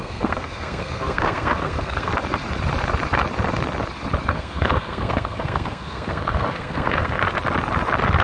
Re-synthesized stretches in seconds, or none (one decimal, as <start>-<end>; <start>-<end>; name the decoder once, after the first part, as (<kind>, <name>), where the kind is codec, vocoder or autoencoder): 0.0-2.1 (codec, SNAC); 4.3-7.2